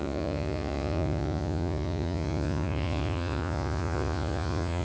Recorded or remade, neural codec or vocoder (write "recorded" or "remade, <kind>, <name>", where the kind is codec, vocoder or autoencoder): remade, vocoder, Vocos